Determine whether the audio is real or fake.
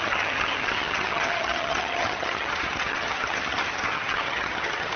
fake